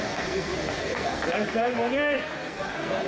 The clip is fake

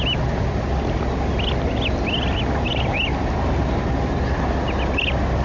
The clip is real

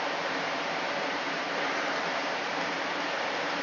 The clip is fake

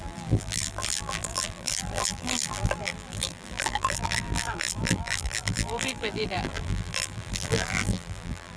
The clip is fake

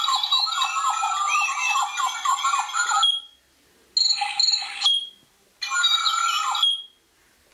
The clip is real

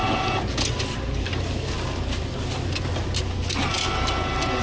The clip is real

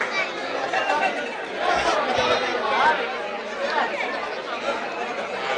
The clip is real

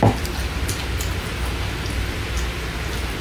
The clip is real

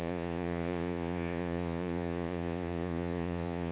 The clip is fake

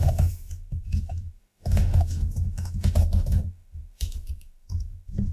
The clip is fake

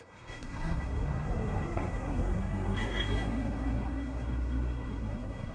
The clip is fake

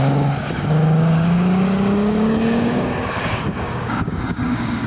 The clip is fake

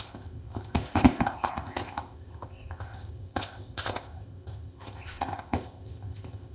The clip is fake